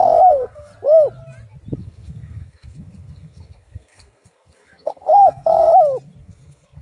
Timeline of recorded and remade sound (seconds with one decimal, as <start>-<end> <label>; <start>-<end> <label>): 0.0-0.7 remade; 0.7-1.8 recorded; 1.8-5.7 remade; 5.7-6.2 recorded; 6.2-6.8 remade